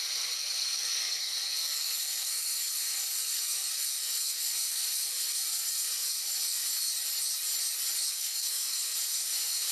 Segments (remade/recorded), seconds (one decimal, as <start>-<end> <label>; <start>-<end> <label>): 0.0-6.9 remade; 6.9-8.1 recorded; 8.1-9.7 remade